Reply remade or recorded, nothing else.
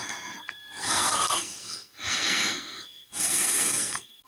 remade